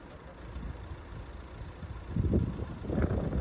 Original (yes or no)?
yes